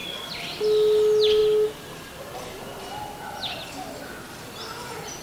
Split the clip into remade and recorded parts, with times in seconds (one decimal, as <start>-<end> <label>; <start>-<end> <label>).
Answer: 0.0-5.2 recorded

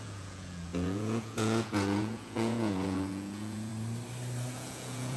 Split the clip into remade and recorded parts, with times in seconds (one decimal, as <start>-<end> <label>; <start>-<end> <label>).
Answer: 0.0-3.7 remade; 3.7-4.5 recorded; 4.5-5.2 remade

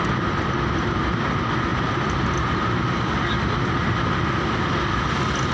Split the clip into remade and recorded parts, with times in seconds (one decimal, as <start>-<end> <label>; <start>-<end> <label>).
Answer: 0.0-5.5 recorded